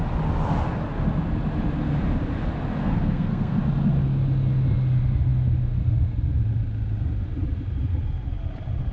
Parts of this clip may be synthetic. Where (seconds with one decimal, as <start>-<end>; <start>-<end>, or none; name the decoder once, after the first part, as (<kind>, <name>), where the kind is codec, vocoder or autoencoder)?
2.8-3.6 (codec, SNAC)